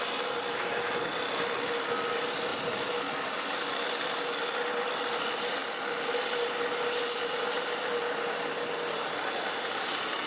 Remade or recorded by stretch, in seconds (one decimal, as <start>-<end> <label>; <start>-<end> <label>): 0.0-10.3 recorded